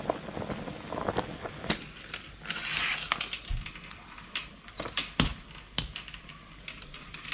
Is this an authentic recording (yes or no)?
yes